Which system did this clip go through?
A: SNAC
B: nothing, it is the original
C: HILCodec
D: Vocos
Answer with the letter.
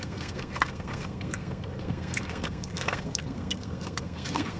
A